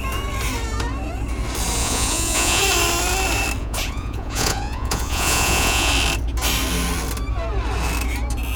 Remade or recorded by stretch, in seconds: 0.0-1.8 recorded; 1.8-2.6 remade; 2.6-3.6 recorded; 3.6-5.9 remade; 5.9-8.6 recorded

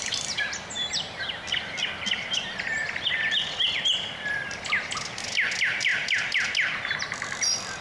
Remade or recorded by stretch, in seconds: 0.0-7.8 recorded

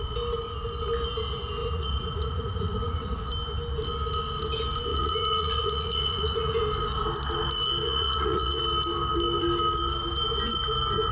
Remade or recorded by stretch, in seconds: 0.0-1.6 recorded; 1.6-3.3 remade; 3.3-4.9 recorded; 4.9-6.6 remade; 6.6-7.8 recorded; 7.8-8.6 remade; 8.6-11.1 recorded

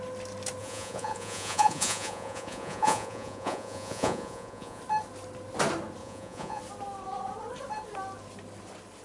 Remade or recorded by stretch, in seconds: 0.0-0.6 recorded; 0.6-4.8 remade; 4.8-6.0 recorded; 6.0-6.6 remade; 6.6-9.0 recorded

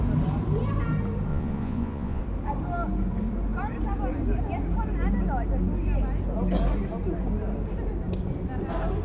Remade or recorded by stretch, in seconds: 0.0-1.3 recorded; 1.3-2.2 remade; 2.2-9.0 recorded

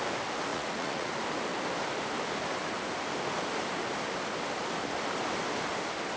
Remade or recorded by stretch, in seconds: 0.0-0.5 recorded; 0.5-1.1 remade; 1.1-6.2 recorded